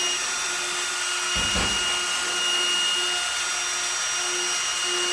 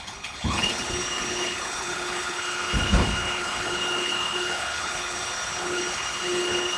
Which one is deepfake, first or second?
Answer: second